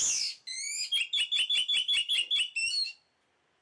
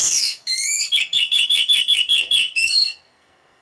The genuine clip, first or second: first